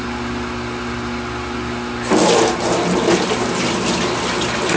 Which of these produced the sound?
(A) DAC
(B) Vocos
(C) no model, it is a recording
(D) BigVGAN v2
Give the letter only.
C